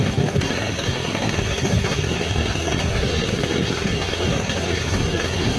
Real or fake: fake